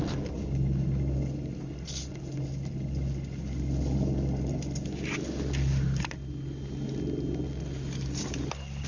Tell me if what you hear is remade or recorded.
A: recorded